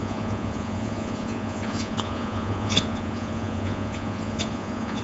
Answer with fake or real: fake